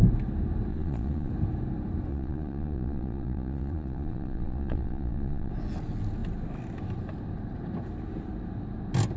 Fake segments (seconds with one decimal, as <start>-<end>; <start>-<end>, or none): 0.7-1.3; 2.1-5.5